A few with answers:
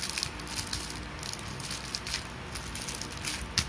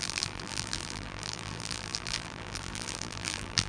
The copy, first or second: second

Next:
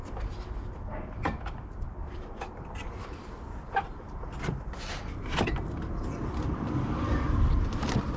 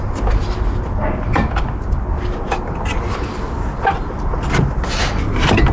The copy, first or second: first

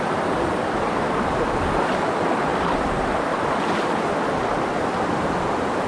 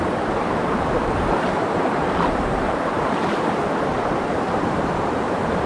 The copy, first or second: second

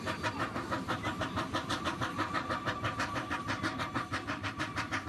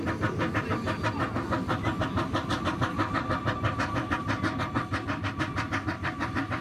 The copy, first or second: first